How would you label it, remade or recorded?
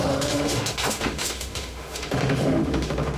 remade